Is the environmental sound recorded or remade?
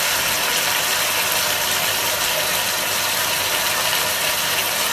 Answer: recorded